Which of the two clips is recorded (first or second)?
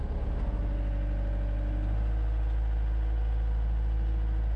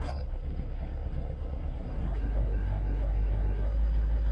first